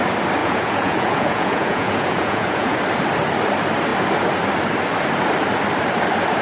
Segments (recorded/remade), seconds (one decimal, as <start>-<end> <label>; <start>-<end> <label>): 0.0-0.4 recorded; 0.4-2.8 remade; 2.8-6.4 recorded